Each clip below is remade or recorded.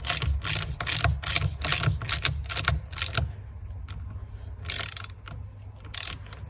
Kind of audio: recorded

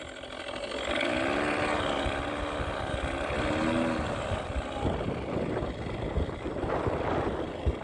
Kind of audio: recorded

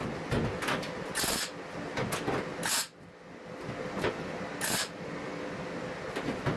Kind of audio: recorded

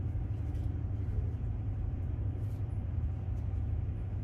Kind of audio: remade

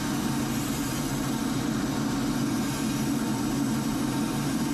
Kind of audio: recorded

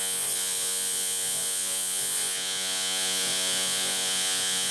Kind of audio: remade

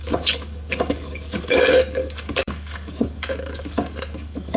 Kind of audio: remade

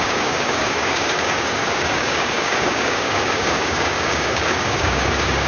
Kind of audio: remade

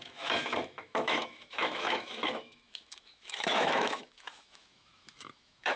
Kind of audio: remade